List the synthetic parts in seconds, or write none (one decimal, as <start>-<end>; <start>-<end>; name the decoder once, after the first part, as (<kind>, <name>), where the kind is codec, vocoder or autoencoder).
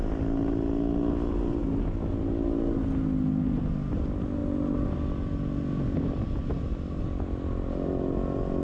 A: none